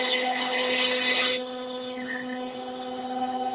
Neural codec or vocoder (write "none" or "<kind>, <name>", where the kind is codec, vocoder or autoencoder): codec, HILCodec